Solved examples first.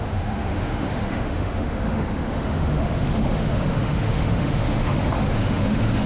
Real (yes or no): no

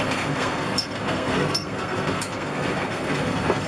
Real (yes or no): no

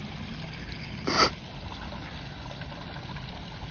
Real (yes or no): yes